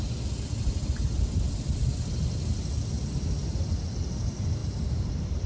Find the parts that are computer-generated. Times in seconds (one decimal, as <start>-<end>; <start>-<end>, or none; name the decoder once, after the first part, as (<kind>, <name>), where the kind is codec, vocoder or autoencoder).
4.6-5.5 (vocoder, BigVGAN v2)

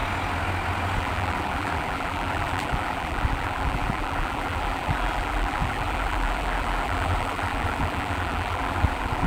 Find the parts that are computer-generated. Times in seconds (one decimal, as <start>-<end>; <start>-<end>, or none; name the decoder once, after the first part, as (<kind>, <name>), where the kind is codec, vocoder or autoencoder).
1.0-9.3 (vocoder, BigVGAN v2)

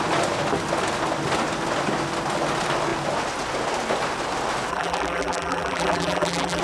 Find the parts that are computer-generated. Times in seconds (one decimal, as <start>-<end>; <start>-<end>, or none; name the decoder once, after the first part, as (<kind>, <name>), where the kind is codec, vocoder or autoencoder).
4.7-6.6 (vocoder, BigVGAN v2)

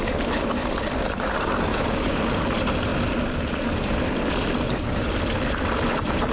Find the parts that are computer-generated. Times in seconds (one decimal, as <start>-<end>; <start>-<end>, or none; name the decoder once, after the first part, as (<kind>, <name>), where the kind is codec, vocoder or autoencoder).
1.7-2.2 (codec, DAC)

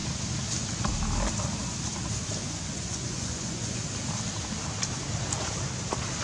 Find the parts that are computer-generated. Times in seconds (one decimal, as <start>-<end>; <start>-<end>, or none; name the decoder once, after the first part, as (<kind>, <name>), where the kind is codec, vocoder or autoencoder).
2.4-3.8 (vocoder, Vocos)

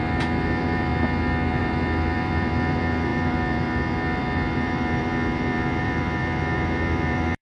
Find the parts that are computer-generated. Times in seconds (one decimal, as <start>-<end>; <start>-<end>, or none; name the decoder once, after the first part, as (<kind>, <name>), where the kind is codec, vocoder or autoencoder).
0.0-0.9 (vocoder, BigVGAN v2); 1.6-7.4

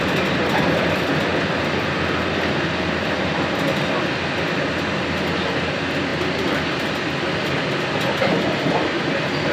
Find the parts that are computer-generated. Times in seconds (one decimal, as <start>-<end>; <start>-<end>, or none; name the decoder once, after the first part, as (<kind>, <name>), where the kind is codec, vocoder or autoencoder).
none